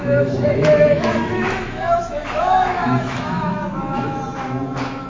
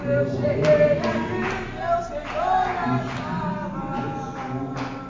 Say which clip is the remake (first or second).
first